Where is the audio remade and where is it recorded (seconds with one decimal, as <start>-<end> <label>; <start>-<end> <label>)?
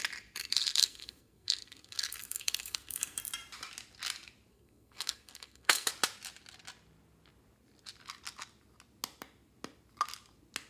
0.0-0.4 recorded; 0.4-3.2 remade; 3.2-4.5 recorded; 4.5-5.9 remade; 5.9-10.7 recorded